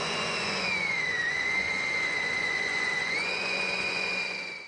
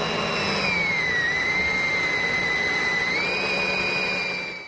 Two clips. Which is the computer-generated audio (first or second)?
first